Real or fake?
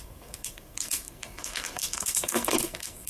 fake